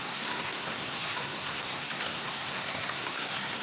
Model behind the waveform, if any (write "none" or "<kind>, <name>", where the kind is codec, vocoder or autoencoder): codec, SNAC